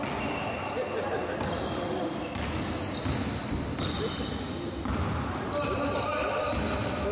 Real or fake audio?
real